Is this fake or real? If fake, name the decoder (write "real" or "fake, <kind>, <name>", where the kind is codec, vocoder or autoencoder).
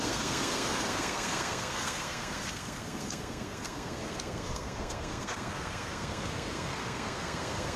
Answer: fake, codec, SNAC